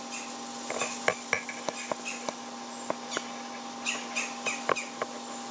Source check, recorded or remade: recorded